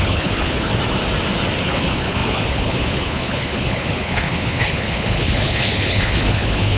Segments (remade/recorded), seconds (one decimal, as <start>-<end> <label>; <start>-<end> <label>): 0.0-0.7 remade; 0.7-1.6 recorded; 1.6-6.8 remade